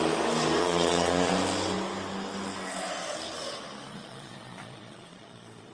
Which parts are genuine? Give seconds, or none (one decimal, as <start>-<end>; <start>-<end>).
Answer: 0.0-0.6; 1.3-3.9